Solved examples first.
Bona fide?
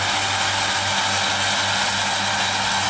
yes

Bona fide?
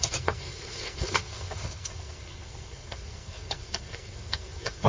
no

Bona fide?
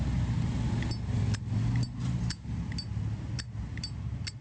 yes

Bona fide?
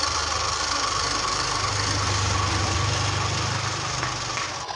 yes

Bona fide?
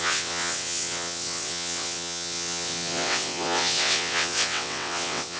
no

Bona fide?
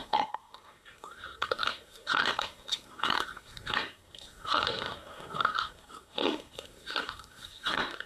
no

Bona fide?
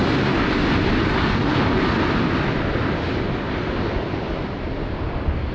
yes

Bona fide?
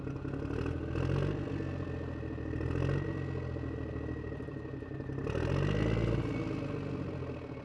yes